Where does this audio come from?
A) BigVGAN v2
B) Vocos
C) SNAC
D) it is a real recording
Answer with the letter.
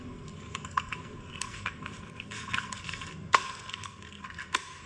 C